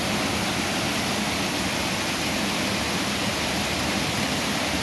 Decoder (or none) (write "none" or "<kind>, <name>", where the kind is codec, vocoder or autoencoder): none